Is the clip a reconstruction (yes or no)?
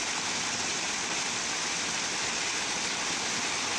no